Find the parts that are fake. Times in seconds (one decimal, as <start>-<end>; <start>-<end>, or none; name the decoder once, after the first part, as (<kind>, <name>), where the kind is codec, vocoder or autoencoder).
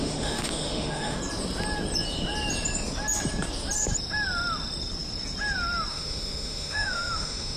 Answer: 0.0-1.2 (autoencoder, DAC-VAE); 5.9-7.6